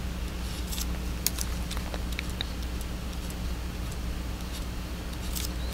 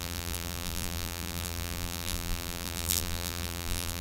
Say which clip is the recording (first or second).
first